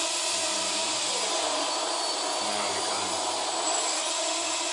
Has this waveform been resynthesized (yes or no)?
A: no